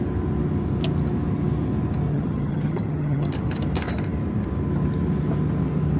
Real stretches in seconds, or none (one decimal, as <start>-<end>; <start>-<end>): 0.0-2.1; 3.3-6.0